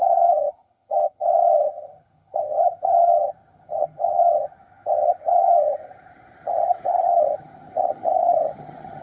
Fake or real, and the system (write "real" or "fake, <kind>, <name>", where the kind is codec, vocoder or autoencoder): fake, vocoder, HiFi-GAN